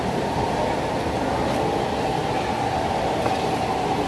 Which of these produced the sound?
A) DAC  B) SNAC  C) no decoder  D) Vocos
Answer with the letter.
C